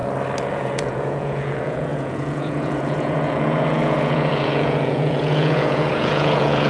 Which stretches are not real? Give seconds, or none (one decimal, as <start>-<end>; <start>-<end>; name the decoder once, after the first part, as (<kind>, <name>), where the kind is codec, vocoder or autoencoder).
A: 0.5-6.7 (vocoder, Vocos)